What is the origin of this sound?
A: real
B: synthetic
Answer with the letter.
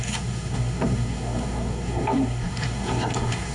B